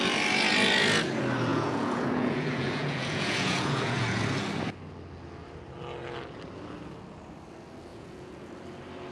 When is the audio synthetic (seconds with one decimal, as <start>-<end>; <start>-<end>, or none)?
1.5-4.2; 7.9-8.5